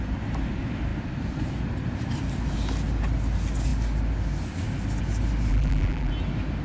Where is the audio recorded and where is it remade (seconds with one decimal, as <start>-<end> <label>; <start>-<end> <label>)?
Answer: 0.0-5.5 recorded; 5.5-6.1 remade; 6.1-6.6 recorded